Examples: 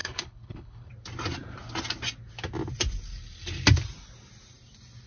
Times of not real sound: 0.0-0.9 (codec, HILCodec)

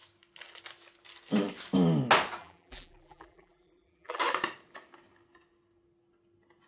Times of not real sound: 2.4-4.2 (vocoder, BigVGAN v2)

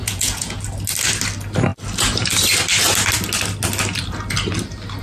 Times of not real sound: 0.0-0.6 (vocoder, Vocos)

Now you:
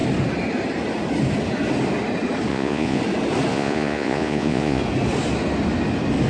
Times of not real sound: 2.5-3.0 (vocoder, Vocos); 3.5-4.8